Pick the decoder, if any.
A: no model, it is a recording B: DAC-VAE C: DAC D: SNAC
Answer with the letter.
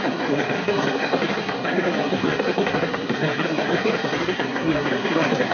D